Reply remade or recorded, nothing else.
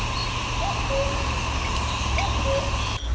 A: recorded